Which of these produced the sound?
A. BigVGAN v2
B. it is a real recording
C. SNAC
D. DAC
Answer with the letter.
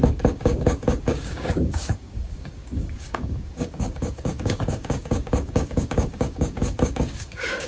D